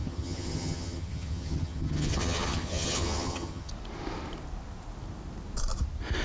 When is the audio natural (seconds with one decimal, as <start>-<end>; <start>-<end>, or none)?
3.7-6.2

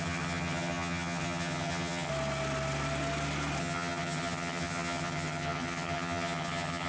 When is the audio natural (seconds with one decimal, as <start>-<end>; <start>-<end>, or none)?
2.1-3.6

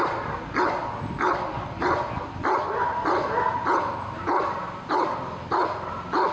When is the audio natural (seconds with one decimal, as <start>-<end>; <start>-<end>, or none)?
0.0-6.3

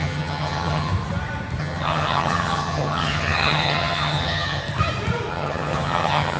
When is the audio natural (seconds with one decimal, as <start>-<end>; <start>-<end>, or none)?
0.9-1.6; 4.6-5.3

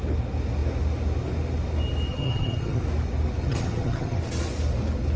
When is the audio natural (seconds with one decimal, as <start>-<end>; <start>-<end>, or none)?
0.0-2.1; 2.8-3.4; 4.2-5.2

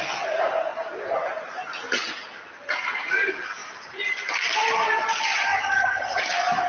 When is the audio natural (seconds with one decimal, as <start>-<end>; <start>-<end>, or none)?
0.0-5.5; 6.2-6.7

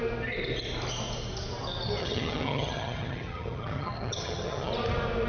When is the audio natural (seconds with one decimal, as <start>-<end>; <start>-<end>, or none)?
0.0-2.0; 4.7-5.3

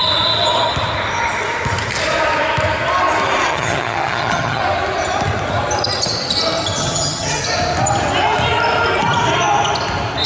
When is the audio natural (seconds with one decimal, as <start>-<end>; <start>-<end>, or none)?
0.0-3.5; 4.6-6.8; 7.4-10.3